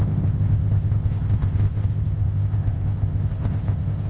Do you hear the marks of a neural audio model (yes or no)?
yes